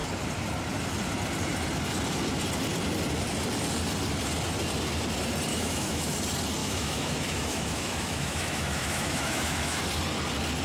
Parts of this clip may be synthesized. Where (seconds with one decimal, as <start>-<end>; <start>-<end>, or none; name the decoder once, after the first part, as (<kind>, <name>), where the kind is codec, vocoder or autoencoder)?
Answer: 5.5-6.1 (autoencoder, DAC-VAE); 6.6-9.8